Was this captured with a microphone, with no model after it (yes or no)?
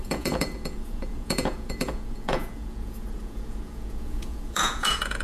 no